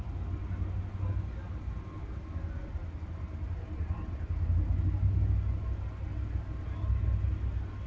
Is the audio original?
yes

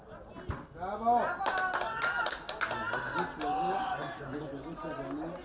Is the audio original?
yes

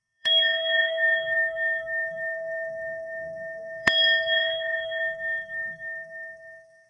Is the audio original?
no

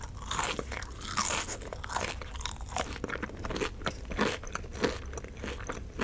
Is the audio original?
yes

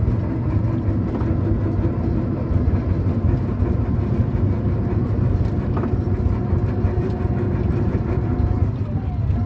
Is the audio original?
yes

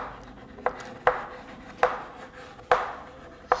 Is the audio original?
yes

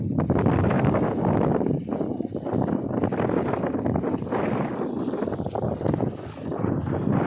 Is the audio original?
yes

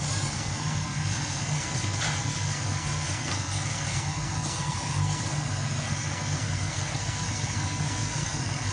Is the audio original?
no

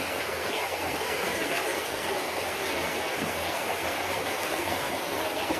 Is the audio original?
no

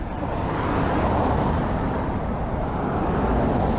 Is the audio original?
yes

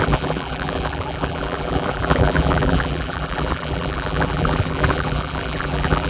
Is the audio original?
no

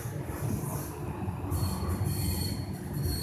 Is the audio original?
yes